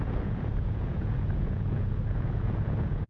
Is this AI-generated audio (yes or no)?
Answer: yes